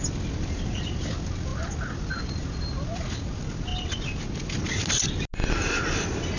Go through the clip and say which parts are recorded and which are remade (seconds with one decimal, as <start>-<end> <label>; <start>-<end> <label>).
0.0-6.4 recorded

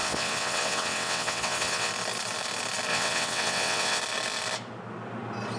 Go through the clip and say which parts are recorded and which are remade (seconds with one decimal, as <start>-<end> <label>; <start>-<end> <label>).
0.0-1.9 remade; 1.9-2.9 recorded; 2.9-4.0 remade; 4.0-5.6 recorded

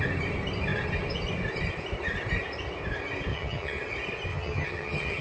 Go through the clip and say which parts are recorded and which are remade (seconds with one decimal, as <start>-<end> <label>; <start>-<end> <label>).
0.0-3.3 recorded; 3.3-3.8 remade; 3.8-4.3 recorded; 4.3-5.2 remade

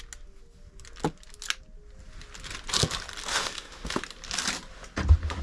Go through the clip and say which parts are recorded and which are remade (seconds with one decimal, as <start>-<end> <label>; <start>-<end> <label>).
0.0-3.3 recorded; 3.3-4.0 remade; 4.0-5.4 recorded